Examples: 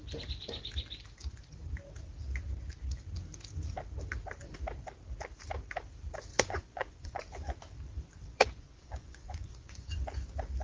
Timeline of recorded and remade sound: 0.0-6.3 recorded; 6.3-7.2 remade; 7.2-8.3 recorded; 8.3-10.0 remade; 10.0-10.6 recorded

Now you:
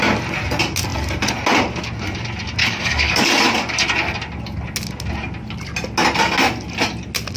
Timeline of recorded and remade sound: 0.0-2.6 recorded; 2.6-3.3 remade; 3.3-7.4 recorded

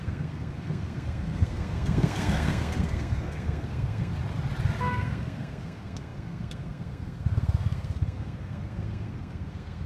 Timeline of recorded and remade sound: 0.0-4.1 remade; 4.1-4.8 recorded; 4.8-9.9 remade

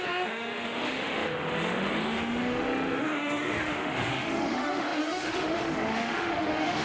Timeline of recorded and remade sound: 0.0-6.8 remade

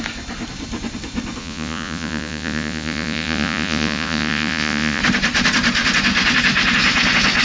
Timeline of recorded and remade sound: 0.0-1.4 recorded; 1.4-5.0 remade; 5.0-7.4 recorded

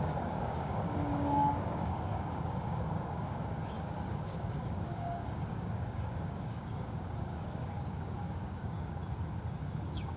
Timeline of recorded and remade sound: 0.0-9.0 remade; 9.0-9.6 recorded; 9.6-10.2 remade